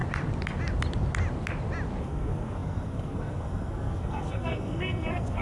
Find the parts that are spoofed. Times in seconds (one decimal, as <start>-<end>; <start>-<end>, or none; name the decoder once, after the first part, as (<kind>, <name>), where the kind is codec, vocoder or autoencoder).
2.0-5.4 (codec, SNAC)